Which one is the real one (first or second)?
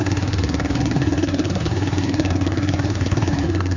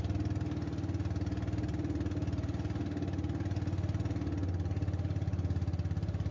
second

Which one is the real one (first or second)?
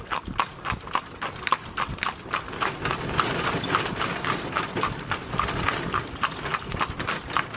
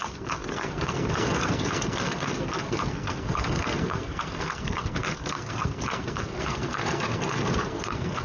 first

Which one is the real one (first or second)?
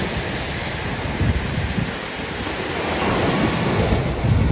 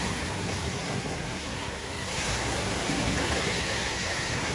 first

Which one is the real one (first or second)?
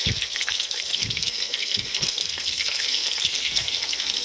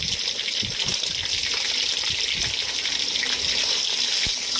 second